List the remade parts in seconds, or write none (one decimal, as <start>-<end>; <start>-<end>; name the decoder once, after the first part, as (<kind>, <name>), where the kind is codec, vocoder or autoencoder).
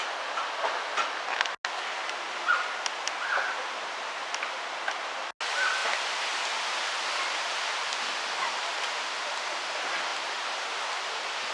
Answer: none